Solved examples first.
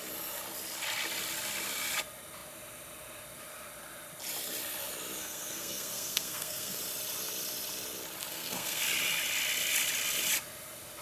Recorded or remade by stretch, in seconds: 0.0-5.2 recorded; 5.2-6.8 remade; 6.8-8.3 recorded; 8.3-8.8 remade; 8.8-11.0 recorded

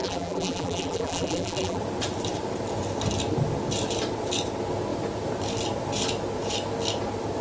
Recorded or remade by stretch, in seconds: 0.0-1.8 remade; 1.8-7.4 recorded

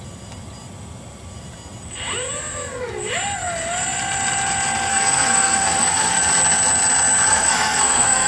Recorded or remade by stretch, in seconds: 0.0-4.9 recorded; 4.9-6.2 remade; 6.2-7.3 recorded; 7.3-8.3 remade

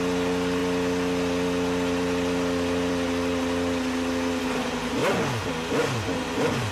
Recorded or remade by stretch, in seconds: 0.0-6.7 recorded

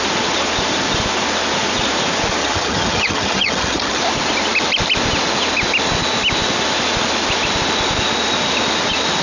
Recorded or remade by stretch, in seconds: 0.0-2.4 recorded; 2.4-4.0 remade; 4.0-9.2 recorded

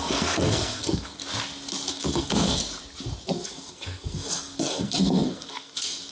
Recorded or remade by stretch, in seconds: 0.0-1.2 remade; 1.2-1.9 recorded; 1.9-2.6 remade; 2.6-3.3 recorded; 3.3-6.1 remade

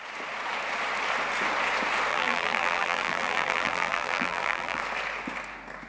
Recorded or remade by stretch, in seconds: 0.0-2.1 recorded; 2.1-4.8 remade; 4.8-5.9 recorded

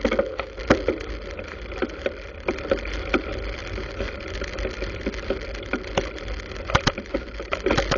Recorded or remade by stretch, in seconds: 0.0-8.0 recorded